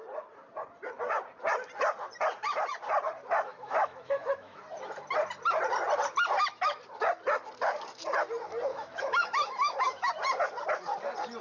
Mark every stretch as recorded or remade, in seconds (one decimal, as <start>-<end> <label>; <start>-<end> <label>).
0.0-3.5 recorded; 3.5-4.6 remade; 4.6-8.7 recorded; 8.7-10.1 remade; 10.1-11.4 recorded